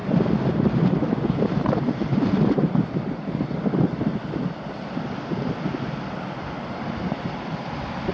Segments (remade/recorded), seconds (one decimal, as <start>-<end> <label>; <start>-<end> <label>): 0.0-8.1 recorded